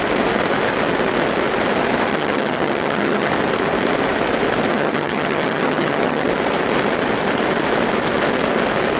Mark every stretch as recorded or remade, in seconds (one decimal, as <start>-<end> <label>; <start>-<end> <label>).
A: 0.0-2.1 recorded; 2.1-3.3 remade; 3.3-4.7 recorded; 4.7-6.3 remade; 6.3-9.0 recorded